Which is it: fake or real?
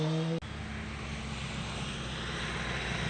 real